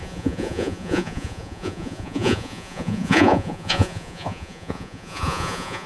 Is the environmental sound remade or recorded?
remade